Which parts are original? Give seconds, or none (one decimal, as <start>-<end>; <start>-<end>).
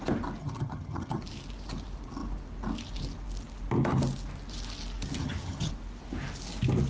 0.0-0.4; 1.2-5.2; 5.7-6.9